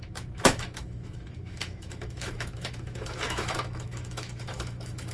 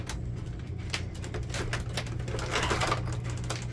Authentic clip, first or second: second